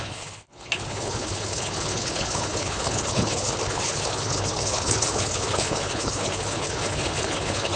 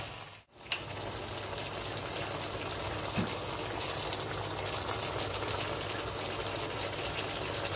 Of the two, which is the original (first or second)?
second